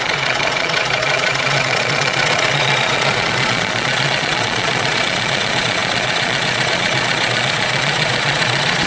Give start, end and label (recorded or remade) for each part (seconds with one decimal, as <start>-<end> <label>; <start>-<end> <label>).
0.0-8.9 remade